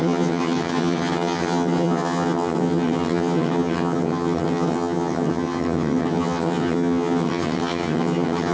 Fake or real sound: fake